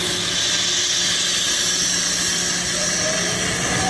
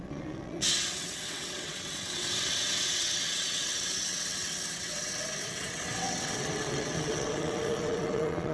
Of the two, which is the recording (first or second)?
first